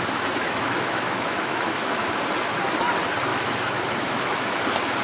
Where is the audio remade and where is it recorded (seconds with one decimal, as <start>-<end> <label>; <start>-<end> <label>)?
0.0-0.4 recorded; 0.4-2.1 remade; 2.1-3.3 recorded; 3.3-4.6 remade; 4.6-5.0 recorded